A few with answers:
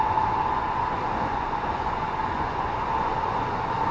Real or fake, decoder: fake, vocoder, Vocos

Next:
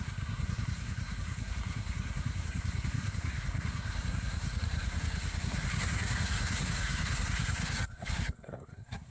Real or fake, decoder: fake, codec, SNAC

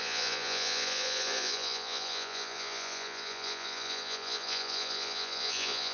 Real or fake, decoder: fake, vocoder, Vocos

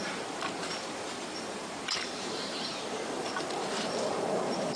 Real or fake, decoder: fake, vocoder, BigVGAN v2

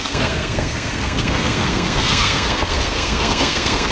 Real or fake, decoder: fake, codec, SNAC